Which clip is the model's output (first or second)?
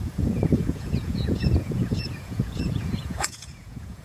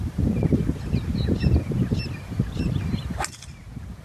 first